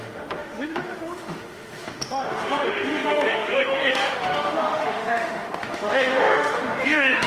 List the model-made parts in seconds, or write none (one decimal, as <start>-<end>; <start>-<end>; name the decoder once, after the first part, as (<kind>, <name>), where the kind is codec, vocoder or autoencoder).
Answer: 0.0-7.3 (autoencoder, DAC-VAE)